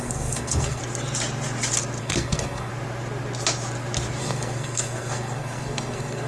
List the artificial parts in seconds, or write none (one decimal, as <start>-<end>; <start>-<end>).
0.0-0.8; 2.0-2.7; 4.2-6.3